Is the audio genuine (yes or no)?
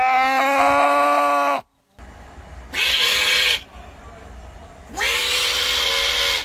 yes